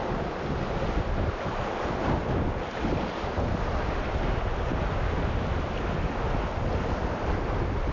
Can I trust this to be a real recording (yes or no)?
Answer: yes